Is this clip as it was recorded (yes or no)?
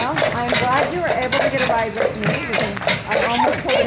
yes